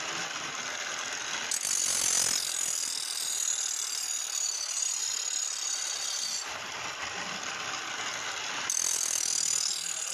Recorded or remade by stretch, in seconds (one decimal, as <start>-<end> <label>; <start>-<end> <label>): 0.0-10.1 recorded